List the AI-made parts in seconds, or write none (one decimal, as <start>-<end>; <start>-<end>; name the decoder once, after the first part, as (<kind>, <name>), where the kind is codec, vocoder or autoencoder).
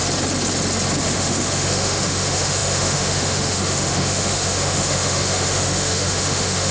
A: 1.0-6.7 (autoencoder, DAC-VAE)